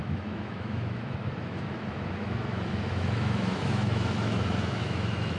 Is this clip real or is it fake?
fake